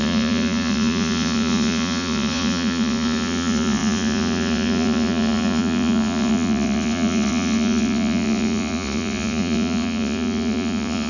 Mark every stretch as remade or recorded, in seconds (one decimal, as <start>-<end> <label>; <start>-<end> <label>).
0.0-11.1 remade